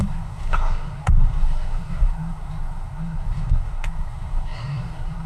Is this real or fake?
fake